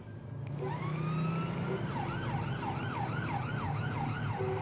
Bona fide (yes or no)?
yes